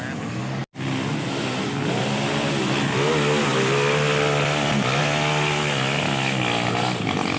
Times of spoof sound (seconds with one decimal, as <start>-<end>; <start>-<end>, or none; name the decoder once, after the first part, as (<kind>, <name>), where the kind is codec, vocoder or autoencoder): none